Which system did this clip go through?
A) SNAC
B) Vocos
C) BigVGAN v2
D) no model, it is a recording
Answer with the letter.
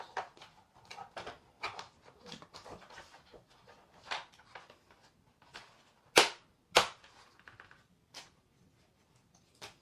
D